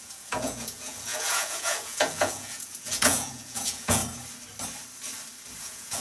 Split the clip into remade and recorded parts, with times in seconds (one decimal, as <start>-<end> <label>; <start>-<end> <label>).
0.0-4.0 remade; 4.0-5.6 recorded; 5.6-6.0 remade